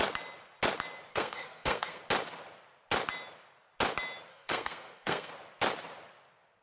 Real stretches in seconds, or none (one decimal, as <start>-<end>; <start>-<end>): 0.0-1.1; 2.0-4.3; 5.3-6.6